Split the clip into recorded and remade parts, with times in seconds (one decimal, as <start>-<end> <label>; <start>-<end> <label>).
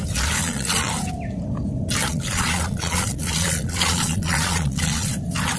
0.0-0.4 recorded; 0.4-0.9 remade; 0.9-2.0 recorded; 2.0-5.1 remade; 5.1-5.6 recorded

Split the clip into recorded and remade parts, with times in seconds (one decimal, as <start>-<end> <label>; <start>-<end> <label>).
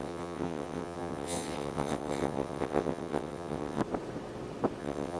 0.0-3.8 remade; 3.8-4.8 recorded; 4.8-5.2 remade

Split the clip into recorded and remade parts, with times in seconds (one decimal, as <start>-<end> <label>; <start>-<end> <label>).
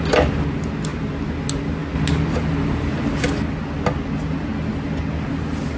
0.0-5.8 recorded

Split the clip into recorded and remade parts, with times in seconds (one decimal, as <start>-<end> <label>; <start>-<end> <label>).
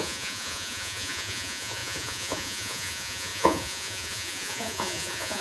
0.0-5.4 remade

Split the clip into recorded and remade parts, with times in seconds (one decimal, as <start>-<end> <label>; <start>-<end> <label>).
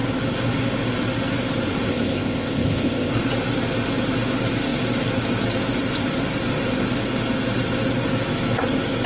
0.0-1.9 recorded; 1.9-3.1 remade; 3.1-9.1 recorded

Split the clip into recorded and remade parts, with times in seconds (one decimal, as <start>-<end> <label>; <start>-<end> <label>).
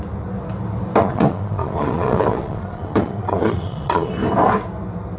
0.0-1.0 recorded; 1.0-4.1 remade; 4.1-5.2 recorded